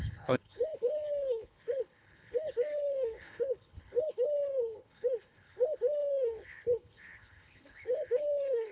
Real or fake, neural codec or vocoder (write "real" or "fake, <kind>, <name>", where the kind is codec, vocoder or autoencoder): fake, codec, HILCodec